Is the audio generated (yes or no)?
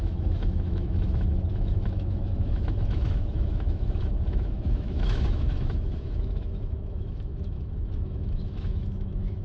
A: yes